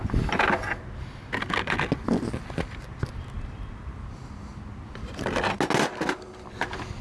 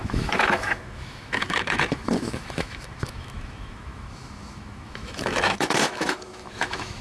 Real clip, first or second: first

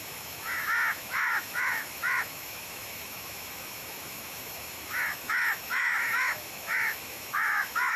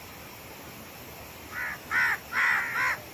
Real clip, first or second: second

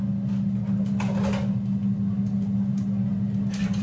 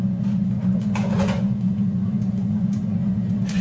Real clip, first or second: first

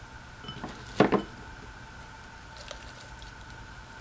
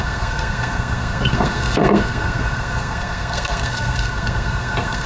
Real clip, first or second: first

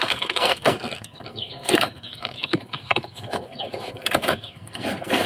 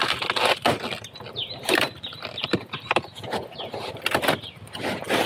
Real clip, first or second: second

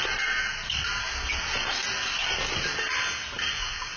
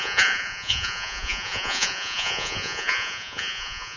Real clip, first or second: first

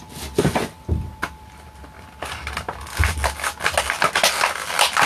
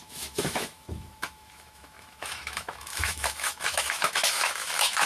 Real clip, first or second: first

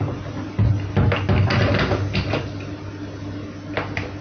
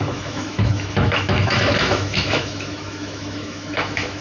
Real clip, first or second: first